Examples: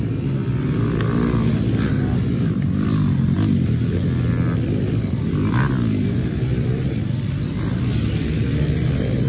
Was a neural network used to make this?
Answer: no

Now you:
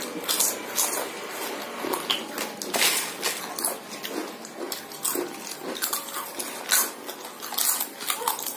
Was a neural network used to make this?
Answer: no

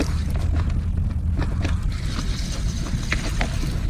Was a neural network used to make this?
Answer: no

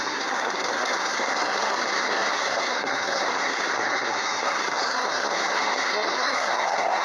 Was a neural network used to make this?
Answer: yes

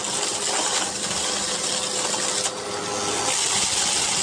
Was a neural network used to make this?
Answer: no